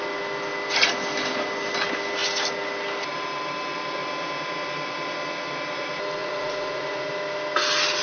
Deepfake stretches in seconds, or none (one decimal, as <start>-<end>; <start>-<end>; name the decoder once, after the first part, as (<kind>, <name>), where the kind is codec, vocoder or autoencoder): 6.2-7.1 (vocoder, Vocos)